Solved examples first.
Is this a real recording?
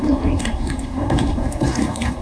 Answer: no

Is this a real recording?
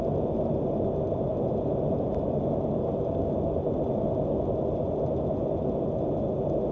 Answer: yes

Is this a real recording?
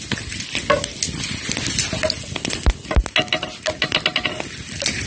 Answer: yes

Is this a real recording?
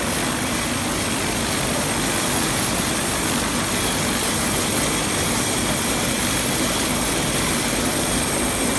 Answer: yes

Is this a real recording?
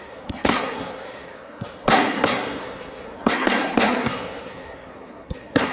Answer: no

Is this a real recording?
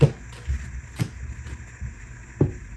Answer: yes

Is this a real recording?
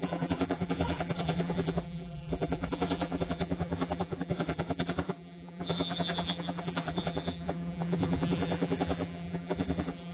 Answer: no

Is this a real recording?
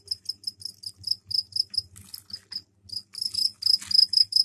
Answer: yes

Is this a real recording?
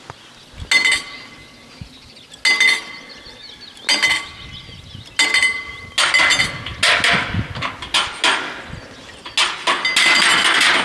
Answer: yes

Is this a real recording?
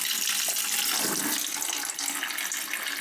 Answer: yes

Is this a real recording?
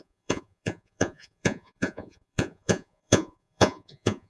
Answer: no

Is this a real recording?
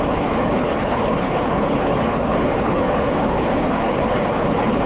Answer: no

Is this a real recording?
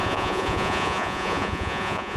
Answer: no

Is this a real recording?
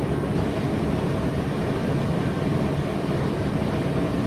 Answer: yes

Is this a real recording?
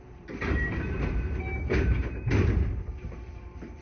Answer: no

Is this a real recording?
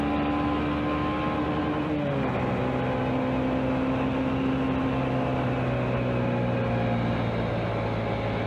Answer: yes